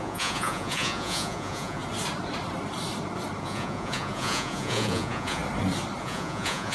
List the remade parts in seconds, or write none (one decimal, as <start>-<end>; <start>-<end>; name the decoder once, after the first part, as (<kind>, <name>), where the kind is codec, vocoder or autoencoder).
0.0-1.8 (vocoder, Vocos); 3.4-5.4; 6.0-6.7